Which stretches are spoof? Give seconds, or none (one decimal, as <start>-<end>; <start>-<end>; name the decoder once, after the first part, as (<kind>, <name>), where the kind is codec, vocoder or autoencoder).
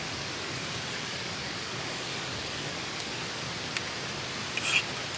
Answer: 0.0-3.1 (codec, DAC)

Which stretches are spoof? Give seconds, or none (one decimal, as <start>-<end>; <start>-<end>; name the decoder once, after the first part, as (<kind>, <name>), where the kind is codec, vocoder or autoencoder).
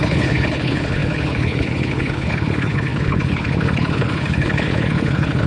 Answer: 0.0-5.5 (codec, HILCodec)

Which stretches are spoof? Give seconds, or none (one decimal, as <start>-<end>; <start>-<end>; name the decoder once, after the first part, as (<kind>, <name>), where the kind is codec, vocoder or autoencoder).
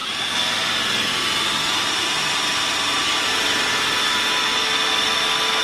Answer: 0.0-3.4 (vocoder, BigVGAN v2)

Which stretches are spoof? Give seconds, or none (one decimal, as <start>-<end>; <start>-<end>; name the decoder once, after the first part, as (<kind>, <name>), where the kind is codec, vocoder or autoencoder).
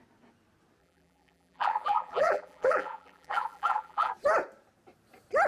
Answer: 0.8-4.1 (vocoder, BigVGAN v2)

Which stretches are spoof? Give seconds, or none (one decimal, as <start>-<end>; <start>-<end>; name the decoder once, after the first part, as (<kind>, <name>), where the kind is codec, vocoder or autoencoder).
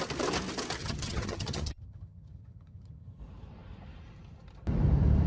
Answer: 0.8-3.2 (vocoder, HiFi-GAN)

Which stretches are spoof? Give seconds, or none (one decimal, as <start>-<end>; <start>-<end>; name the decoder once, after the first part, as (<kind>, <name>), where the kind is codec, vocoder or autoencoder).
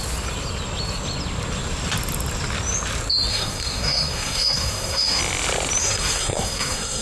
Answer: 3.3-5.2 (codec, SNAC); 5.8-7.0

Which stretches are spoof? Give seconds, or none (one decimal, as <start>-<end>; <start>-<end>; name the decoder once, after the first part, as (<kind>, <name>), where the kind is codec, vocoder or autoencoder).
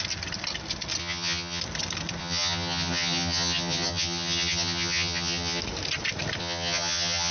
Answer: 1.0-1.6 (vocoder, HiFi-GAN); 2.2-5.6; 6.4-7.3